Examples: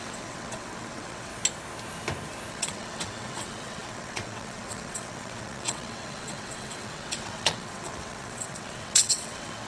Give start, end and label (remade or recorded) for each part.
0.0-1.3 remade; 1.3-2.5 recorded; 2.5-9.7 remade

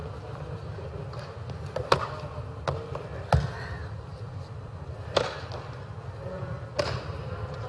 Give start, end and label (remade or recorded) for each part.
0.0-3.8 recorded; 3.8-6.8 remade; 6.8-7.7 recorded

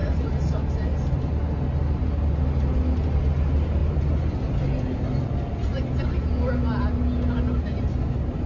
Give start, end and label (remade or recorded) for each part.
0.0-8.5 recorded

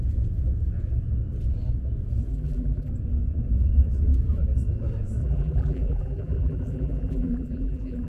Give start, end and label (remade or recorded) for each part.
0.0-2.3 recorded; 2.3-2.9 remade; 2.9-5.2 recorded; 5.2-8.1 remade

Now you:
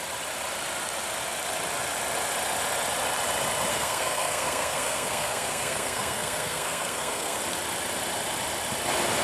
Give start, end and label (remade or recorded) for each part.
0.0-3.7 recorded; 3.7-7.4 remade; 7.4-9.2 recorded